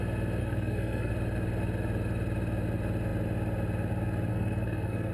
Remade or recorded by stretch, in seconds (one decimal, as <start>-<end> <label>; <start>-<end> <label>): 0.0-0.4 recorded; 0.4-1.1 remade; 1.1-4.3 recorded; 4.3-5.1 remade